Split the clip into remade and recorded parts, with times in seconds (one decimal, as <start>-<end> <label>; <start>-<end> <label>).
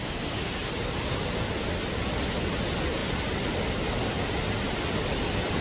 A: 0.0-5.6 recorded